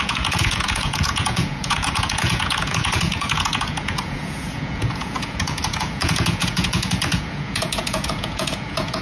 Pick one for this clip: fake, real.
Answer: fake